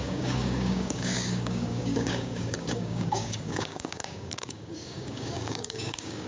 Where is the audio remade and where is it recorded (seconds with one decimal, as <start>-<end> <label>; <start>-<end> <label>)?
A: 0.0-6.3 remade